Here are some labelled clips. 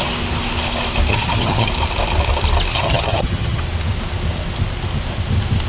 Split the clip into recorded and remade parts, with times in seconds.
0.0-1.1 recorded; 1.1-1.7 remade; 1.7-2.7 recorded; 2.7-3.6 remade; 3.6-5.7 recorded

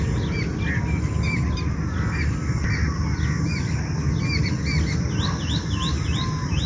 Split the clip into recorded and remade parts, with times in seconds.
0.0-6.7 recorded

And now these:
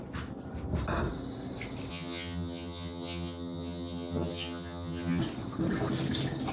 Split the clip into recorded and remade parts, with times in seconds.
0.0-1.9 recorded; 1.9-5.2 remade; 5.2-6.5 recorded

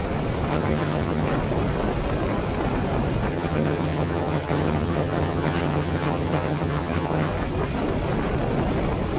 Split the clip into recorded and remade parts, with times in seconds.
0.0-0.5 recorded; 0.5-1.3 remade; 1.3-3.3 recorded; 3.3-7.3 remade; 7.3-9.2 recorded